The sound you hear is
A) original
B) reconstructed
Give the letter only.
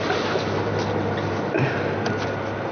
A